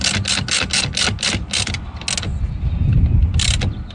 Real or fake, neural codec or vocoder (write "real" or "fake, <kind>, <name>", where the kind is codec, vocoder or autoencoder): real